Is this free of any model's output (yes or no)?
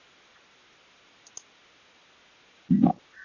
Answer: yes